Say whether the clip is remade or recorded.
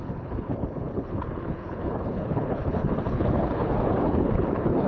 remade